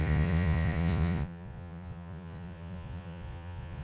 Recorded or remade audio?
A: remade